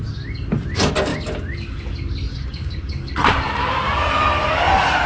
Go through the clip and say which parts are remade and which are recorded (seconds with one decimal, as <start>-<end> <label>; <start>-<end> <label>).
0.0-2.3 recorded; 2.3-3.1 remade; 3.1-5.1 recorded